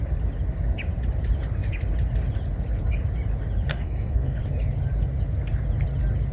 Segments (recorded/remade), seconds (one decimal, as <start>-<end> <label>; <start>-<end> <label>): 0.0-3.7 recorded; 3.7-4.4 remade; 4.4-6.3 recorded